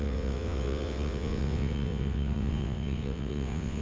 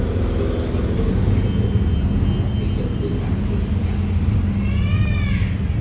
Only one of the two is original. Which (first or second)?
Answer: second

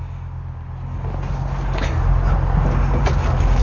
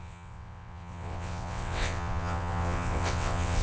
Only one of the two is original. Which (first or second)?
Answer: first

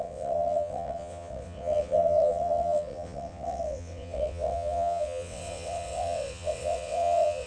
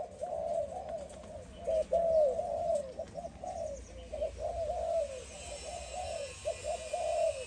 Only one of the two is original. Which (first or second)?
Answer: second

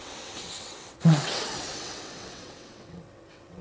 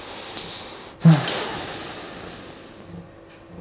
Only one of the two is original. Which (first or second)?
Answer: second